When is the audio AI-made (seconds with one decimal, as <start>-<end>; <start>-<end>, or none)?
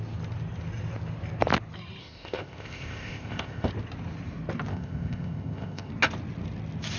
2.0-3.7; 4.7-5.9